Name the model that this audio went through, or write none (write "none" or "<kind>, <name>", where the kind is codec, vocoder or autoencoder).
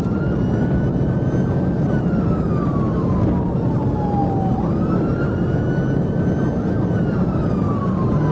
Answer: none